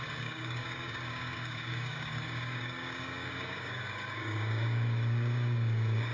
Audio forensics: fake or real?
fake